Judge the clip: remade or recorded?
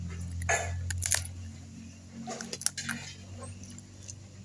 recorded